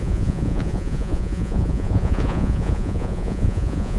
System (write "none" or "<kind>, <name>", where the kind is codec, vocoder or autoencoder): vocoder, Vocos